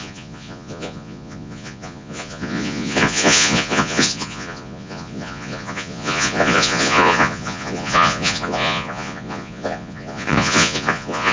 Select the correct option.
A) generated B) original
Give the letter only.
A